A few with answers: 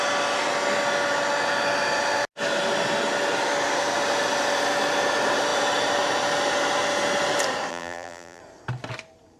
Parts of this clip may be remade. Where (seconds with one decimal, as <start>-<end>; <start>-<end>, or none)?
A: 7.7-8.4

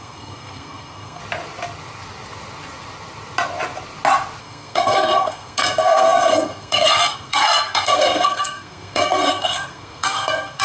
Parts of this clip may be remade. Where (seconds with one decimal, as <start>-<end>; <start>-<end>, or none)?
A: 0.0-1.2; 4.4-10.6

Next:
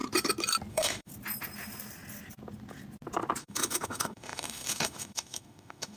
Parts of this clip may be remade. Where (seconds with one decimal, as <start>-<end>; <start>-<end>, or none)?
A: 0.7-1.1; 3.4-6.0

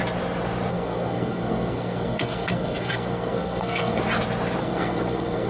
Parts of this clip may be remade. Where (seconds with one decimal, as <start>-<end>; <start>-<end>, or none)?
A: 0.7-4.0; 4.6-5.5

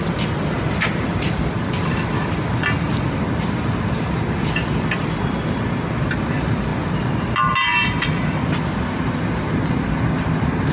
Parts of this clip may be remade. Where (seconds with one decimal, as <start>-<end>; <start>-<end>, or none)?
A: 1.1-3.2

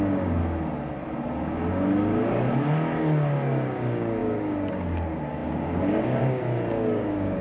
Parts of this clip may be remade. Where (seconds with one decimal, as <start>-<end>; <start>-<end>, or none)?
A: 0.0-0.4; 1.7-7.4